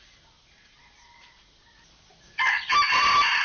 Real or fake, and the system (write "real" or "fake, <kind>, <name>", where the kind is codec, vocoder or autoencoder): real